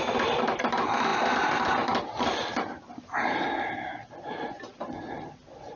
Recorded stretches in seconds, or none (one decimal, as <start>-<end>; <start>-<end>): 0.0-5.8